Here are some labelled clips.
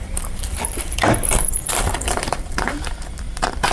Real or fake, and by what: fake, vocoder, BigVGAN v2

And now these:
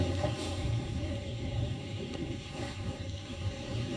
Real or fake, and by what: fake, codec, SNAC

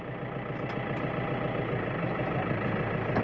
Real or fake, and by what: real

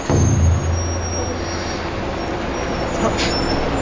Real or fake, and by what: real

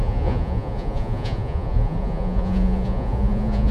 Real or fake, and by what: fake, vocoder, Vocos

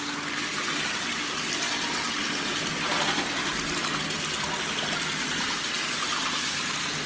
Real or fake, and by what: real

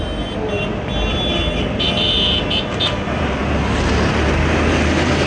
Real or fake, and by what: real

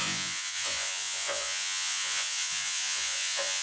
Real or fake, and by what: fake, vocoder, Vocos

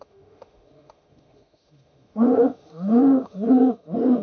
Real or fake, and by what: fake, autoencoder, DAC-VAE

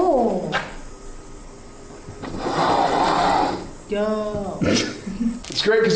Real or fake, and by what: real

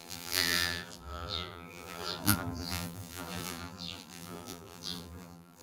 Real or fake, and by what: fake, vocoder, BigVGAN v2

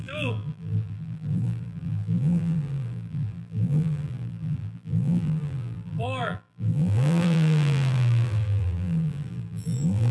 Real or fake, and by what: fake, vocoder, BigVGAN v2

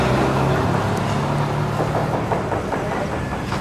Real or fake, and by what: real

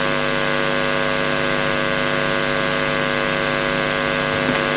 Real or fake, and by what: real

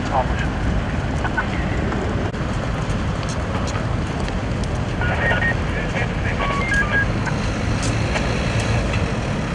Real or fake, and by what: real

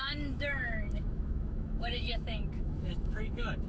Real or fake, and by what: fake, autoencoder, DAC-VAE